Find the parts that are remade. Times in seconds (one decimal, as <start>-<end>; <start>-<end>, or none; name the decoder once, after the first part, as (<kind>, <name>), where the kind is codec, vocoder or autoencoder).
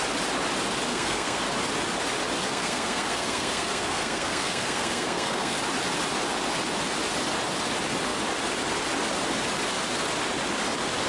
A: 0.9-1.4 (codec, SNAC); 2.4-5.6